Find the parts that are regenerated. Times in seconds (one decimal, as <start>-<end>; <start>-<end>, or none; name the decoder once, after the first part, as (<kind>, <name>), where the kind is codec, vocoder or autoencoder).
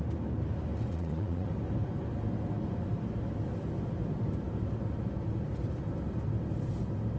0.9-1.5 (vocoder, Vocos)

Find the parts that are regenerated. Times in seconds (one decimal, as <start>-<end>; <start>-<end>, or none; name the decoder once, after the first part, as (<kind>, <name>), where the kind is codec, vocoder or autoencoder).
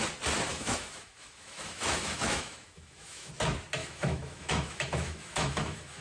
0.5-3.3 (autoencoder, DAC-VAE); 3.8-6.0